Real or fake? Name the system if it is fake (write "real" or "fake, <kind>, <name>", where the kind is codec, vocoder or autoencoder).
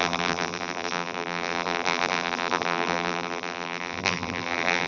fake, vocoder, BigVGAN v2